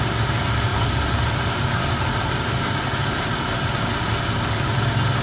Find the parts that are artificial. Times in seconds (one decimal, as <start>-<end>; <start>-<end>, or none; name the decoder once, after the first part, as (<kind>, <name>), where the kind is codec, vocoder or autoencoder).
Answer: 0.7-3.8 (vocoder, BigVGAN v2)